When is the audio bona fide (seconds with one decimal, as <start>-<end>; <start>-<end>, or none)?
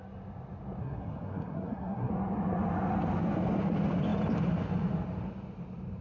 0.0-0.8; 2.1-6.0